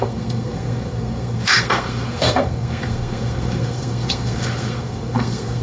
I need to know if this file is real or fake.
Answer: fake